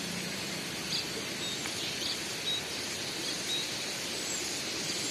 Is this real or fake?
real